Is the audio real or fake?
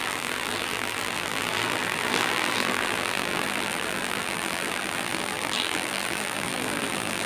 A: fake